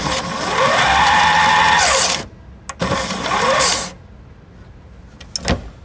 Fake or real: real